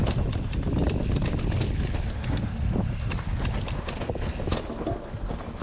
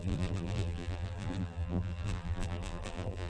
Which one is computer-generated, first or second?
second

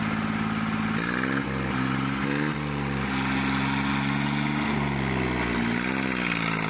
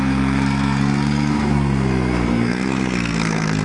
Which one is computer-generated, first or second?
second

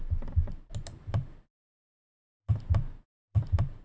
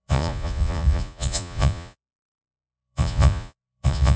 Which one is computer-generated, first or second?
second